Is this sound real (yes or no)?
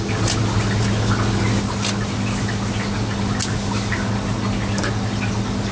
yes